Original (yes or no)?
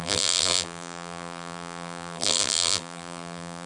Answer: no